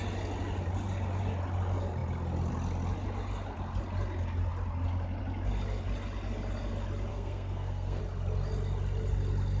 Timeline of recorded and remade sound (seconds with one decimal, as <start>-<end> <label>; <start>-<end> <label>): 0.0-7.1 recorded; 7.1-8.0 remade; 8.0-9.6 recorded